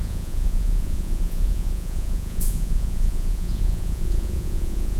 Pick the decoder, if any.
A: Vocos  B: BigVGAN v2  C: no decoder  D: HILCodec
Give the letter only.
A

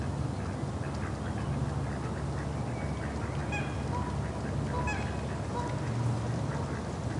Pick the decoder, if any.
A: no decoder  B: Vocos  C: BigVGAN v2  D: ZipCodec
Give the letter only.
A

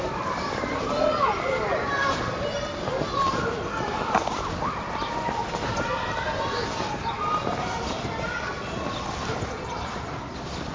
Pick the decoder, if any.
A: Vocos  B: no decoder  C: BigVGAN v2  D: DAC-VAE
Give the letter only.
B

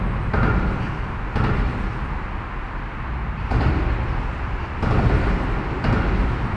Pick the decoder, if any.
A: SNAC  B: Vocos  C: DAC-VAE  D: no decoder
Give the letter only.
D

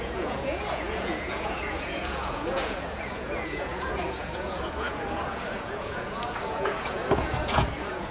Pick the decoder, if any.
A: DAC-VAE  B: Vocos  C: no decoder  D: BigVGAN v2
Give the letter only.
B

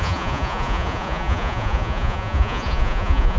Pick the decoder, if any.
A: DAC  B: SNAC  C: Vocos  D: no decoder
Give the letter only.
C